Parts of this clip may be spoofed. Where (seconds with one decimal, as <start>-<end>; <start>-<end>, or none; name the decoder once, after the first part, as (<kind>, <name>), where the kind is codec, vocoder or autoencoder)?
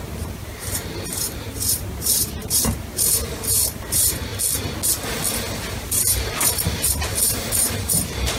0.0-4.3 (vocoder, BigVGAN v2); 5.8-8.4